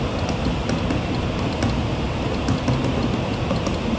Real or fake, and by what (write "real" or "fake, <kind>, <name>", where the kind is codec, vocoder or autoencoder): real